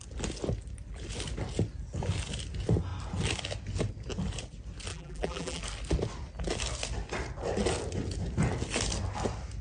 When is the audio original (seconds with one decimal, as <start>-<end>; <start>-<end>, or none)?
0.0-4.9; 5.6-9.6